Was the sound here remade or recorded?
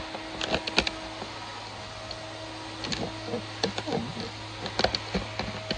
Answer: recorded